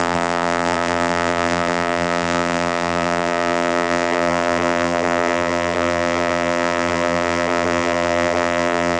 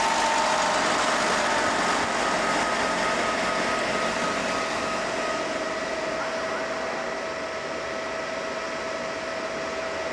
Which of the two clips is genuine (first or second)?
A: second